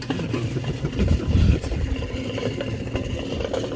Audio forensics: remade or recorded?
recorded